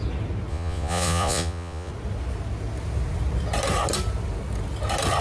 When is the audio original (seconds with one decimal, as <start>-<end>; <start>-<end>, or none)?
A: 0.0-0.5; 1.9-5.2